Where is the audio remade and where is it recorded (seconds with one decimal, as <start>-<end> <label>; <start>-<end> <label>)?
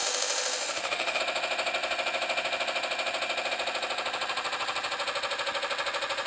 0.0-1.2 remade; 1.2-6.3 recorded